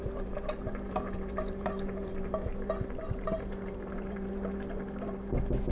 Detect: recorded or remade remade